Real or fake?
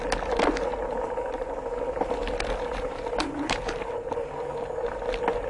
real